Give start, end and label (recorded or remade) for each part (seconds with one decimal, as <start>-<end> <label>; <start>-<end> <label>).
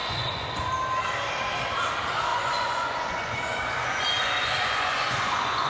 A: 0.0-0.7 remade; 0.7-2.3 recorded; 2.3-5.7 remade